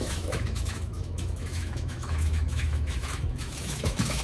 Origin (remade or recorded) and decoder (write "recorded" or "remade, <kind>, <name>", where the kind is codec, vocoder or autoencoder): remade, autoencoder, DAC-VAE